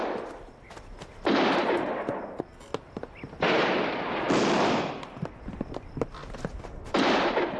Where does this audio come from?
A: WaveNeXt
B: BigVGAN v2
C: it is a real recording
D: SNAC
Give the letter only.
C